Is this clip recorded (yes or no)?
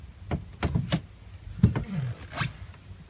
yes